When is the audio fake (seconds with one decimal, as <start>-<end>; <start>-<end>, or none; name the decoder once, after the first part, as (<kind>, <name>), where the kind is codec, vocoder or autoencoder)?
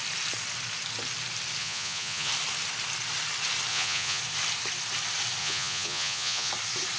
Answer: 1.6-2.3 (vocoder, Vocos); 3.7-4.2; 5.4-6.5